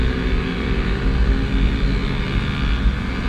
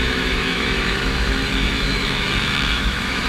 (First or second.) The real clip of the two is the first